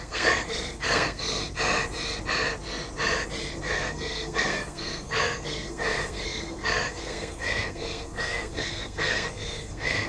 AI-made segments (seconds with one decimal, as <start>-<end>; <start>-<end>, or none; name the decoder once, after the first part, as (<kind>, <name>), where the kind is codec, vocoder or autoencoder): 0.0-1.4 (codec, SNAC); 3.6-10.1